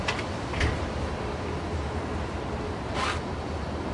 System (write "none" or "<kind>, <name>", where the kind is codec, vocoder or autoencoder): none